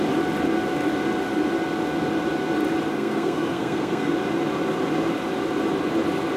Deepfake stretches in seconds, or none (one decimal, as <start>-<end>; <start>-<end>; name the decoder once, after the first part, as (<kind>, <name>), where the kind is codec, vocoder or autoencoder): 2.9-4.1 (codec, SNAC)